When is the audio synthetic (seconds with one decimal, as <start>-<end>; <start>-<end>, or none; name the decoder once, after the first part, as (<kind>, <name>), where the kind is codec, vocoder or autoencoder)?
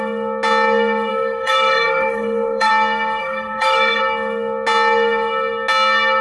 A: 1.1-2.7 (codec, SNAC); 3.2-4.0